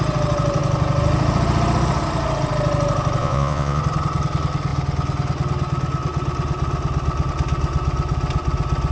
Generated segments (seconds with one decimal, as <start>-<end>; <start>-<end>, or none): 3.2-3.8